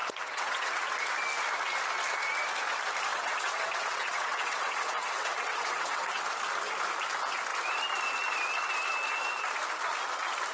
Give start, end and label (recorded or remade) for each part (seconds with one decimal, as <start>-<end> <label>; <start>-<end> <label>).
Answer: 0.0-0.8 remade; 0.8-3.1 recorded; 3.1-6.2 remade; 6.2-10.5 recorded